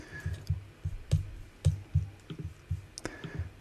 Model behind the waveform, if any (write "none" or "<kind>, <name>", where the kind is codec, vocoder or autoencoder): none